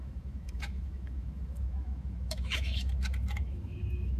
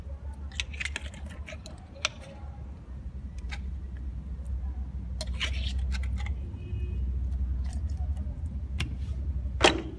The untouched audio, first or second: second